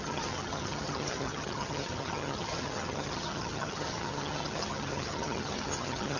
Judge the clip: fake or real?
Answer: fake